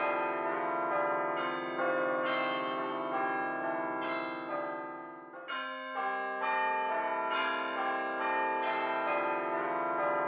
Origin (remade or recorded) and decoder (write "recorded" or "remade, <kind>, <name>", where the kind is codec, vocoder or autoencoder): recorded